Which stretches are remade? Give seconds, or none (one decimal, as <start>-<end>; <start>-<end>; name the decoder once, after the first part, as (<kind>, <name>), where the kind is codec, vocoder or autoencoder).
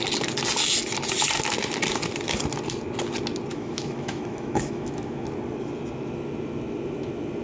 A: 3.5-5.2 (autoencoder, DAC-VAE)